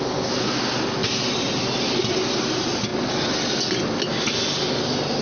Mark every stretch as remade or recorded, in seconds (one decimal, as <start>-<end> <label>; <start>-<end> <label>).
0.0-5.2 recorded

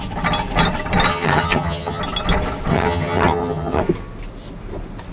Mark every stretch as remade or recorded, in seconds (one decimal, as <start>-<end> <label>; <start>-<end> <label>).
0.0-1.1 recorded; 1.1-2.0 remade; 2.0-2.7 recorded; 2.7-3.8 remade; 3.8-5.1 recorded

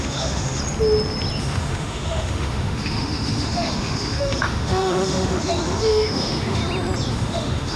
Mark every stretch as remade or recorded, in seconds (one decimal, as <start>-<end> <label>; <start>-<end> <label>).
0.0-0.6 remade; 0.6-1.4 recorded; 1.4-6.6 remade; 6.6-7.1 recorded; 7.1-7.8 remade